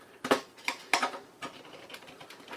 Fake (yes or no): no